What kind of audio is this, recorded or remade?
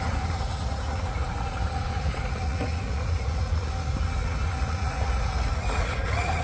remade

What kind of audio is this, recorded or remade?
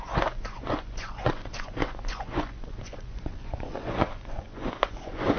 remade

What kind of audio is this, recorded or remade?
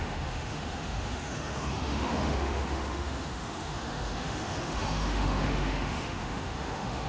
remade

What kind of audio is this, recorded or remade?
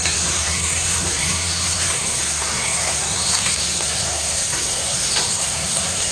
remade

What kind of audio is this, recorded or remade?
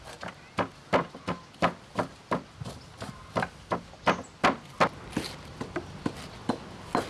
recorded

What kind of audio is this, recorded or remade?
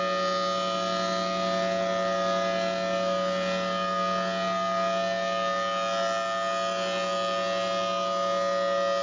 recorded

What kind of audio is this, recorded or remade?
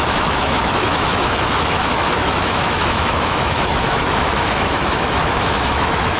remade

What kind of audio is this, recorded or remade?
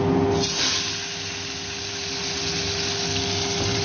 recorded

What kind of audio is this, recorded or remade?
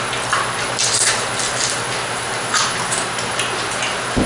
remade